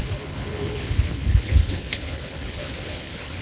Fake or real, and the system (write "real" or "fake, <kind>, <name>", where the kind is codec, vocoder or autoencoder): fake, codec, HILCodec